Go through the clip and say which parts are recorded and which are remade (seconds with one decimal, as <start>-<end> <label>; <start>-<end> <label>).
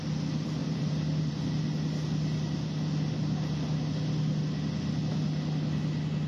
0.0-0.6 recorded; 0.6-1.3 remade; 1.3-6.3 recorded